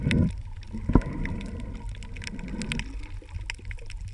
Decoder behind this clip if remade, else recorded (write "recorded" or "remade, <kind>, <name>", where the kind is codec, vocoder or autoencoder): recorded